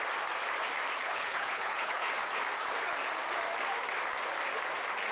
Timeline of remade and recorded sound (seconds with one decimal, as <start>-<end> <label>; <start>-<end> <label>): 0.0-1.0 recorded; 1.0-2.1 remade; 2.1-5.1 recorded